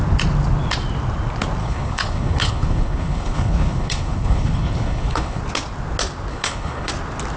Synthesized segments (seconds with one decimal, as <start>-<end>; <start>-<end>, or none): 1.6-5.4; 6.3-6.9